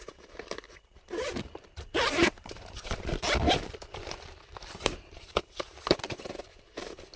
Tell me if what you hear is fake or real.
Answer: fake